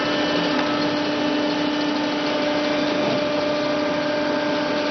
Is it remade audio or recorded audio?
recorded